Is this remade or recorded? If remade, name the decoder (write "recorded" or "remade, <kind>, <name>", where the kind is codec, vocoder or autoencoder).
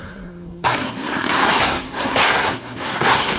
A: remade, codec, SNAC